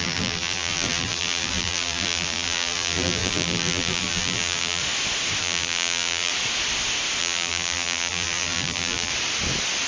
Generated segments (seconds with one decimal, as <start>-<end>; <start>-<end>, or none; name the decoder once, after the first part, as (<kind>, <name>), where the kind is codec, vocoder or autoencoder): 0.0-4.8 (vocoder, BigVGAN v2); 5.4-6.3; 7.2-9.1